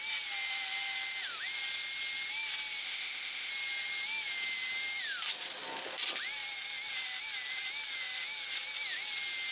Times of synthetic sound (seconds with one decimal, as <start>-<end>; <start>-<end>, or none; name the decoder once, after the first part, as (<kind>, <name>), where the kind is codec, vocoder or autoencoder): 2.8-3.5 (codec, ZipCodec)